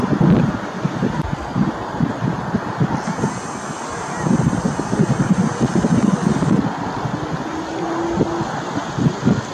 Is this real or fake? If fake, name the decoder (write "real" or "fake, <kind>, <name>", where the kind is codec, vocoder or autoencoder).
real